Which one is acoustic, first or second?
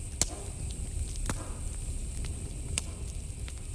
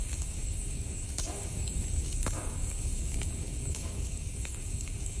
first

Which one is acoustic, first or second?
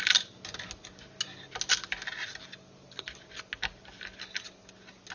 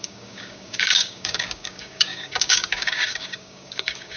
first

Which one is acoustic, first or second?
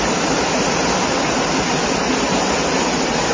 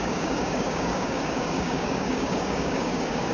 first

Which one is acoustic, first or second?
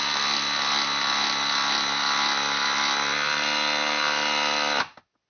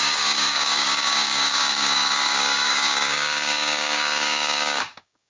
first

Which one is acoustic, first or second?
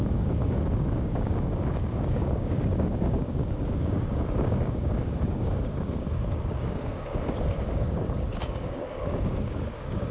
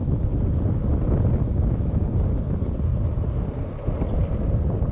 second